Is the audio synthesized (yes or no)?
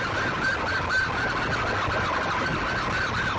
no